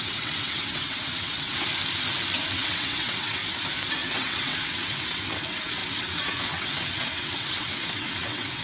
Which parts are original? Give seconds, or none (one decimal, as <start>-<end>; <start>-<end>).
1.7-2.5; 3.4-4.0